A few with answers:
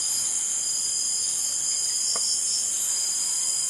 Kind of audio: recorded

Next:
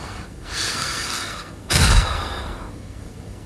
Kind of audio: remade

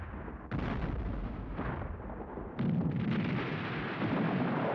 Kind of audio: recorded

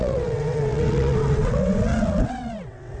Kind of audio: remade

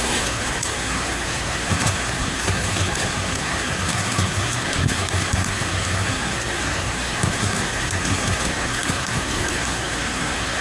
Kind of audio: remade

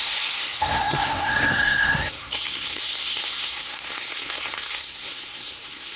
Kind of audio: remade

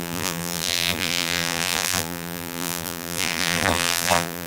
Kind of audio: remade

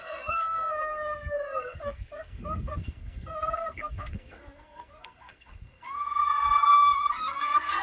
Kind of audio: remade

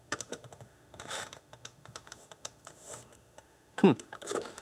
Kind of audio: remade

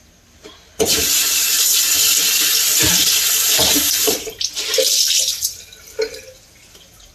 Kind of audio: remade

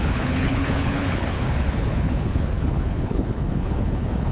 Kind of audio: remade